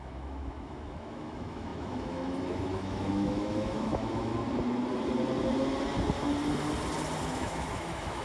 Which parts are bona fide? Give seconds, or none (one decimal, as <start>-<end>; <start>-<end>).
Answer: 4.3-7.2